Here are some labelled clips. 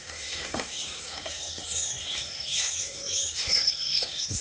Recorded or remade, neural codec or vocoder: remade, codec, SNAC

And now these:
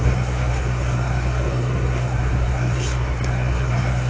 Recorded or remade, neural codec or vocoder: remade, codec, SNAC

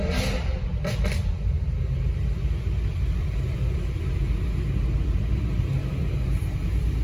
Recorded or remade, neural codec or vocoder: recorded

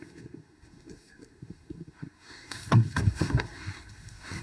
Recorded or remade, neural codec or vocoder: remade, codec, SNAC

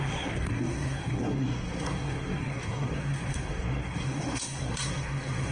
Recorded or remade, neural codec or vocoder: remade, codec, SNAC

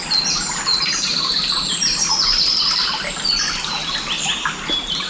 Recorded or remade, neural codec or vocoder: recorded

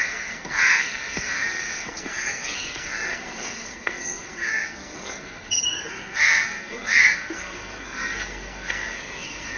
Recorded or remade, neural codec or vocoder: remade, codec, SNAC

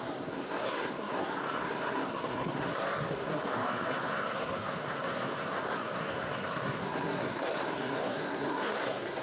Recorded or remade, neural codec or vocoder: remade, codec, SNAC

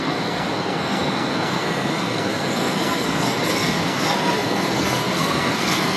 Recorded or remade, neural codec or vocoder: remade, codec, SNAC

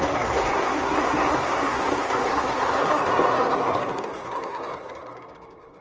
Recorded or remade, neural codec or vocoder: remade, codec, SNAC